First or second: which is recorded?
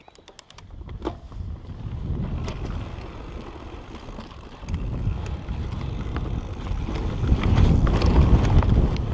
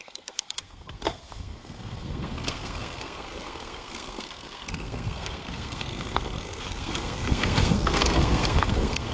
first